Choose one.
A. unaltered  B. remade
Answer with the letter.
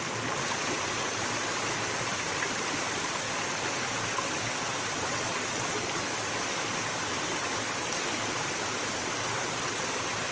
A